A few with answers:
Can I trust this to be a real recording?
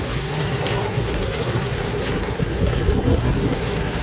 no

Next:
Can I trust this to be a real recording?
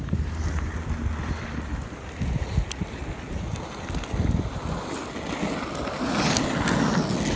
yes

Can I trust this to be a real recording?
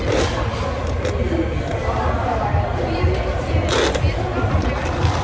yes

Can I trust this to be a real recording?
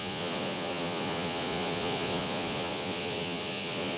no